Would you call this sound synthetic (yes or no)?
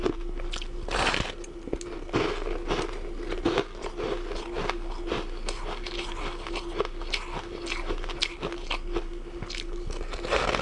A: no